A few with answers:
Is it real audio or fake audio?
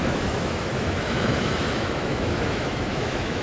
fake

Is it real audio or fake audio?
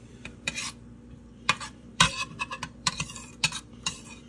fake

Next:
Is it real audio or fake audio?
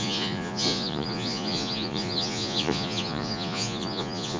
fake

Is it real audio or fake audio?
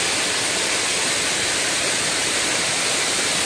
real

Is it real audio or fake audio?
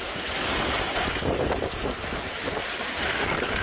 real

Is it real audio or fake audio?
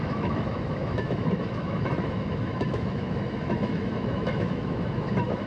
fake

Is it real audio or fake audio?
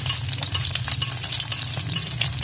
fake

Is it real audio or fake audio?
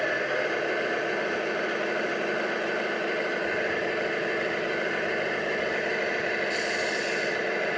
real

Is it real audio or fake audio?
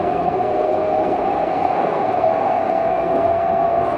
fake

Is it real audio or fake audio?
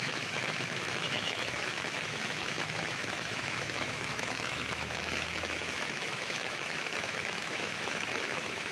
fake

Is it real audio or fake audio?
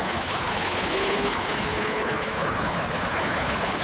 fake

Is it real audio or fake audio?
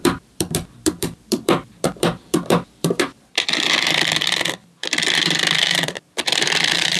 fake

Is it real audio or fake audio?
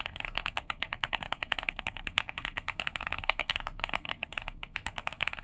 fake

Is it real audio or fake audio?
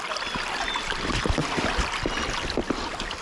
real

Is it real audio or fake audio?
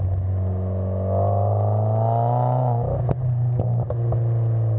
real